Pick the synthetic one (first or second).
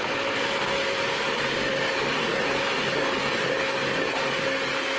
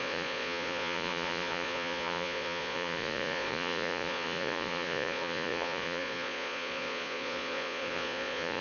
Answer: second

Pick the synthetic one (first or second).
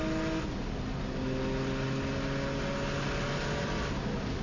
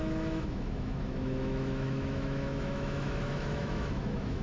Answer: second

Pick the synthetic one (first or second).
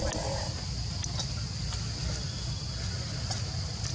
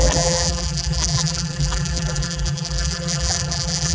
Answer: second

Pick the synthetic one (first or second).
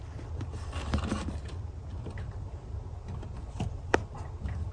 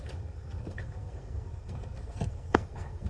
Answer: second